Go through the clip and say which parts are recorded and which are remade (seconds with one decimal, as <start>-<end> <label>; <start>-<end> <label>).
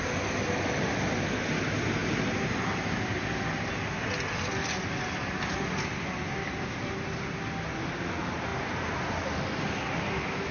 0.0-10.5 recorded